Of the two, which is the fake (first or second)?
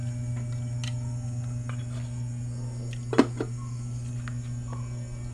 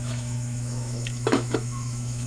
second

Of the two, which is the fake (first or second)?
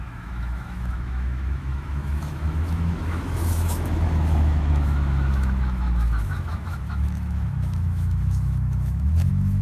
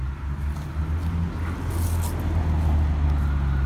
first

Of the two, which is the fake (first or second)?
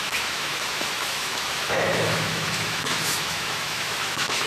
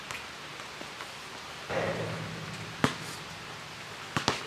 first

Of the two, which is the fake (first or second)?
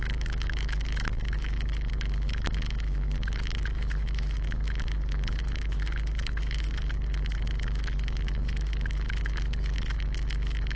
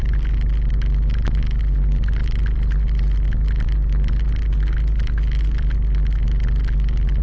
first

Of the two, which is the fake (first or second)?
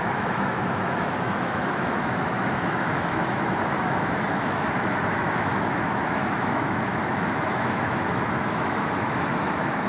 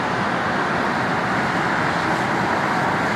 first